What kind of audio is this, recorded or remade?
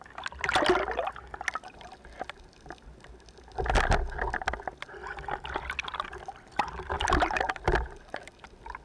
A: recorded